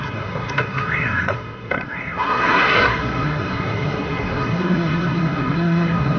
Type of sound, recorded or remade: remade